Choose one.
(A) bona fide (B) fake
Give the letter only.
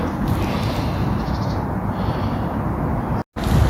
A